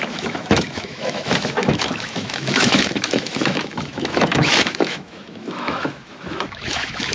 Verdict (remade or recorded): remade